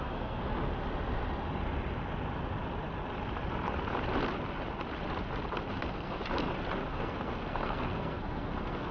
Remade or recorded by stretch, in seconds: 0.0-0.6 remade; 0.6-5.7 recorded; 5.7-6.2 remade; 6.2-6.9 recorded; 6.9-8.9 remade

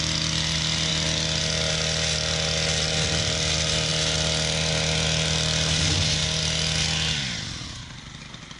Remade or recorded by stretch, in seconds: 0.0-8.6 recorded